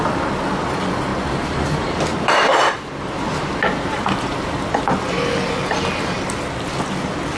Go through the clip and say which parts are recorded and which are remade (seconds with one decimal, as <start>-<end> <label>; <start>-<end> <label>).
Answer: 0.0-1.1 recorded; 1.1-4.7 remade; 4.7-7.4 recorded